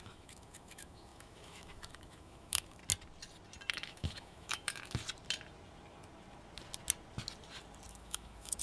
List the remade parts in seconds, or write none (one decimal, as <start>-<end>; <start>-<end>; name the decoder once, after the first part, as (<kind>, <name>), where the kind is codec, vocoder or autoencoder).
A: 0.0-2.8 (autoencoder, DAC-VAE); 3.7-5.0; 7.9-8.6